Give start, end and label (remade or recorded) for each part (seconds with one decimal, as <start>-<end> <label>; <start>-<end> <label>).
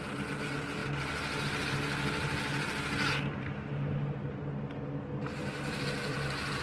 0.0-6.6 recorded